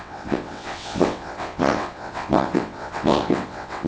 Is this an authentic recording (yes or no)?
no